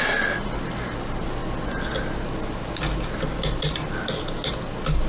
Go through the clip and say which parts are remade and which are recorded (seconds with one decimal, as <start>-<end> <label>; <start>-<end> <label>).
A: 0.0-5.1 recorded